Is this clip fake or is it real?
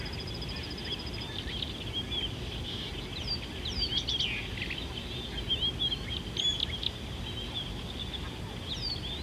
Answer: real